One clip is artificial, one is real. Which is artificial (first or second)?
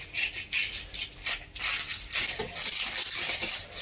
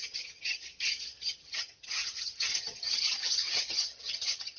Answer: second